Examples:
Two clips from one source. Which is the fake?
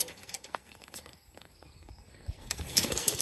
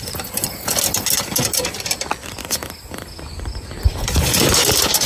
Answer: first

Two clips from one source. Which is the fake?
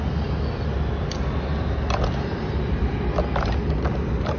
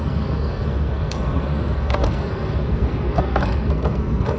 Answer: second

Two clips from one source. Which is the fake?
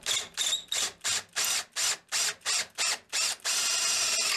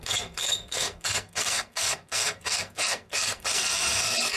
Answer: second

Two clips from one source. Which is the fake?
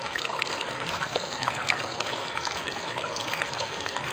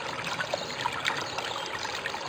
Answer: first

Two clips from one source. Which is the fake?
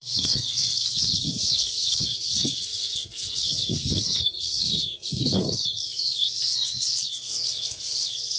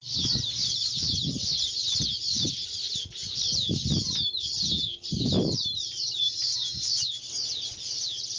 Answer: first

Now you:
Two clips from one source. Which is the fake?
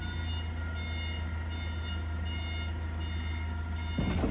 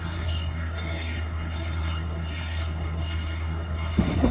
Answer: second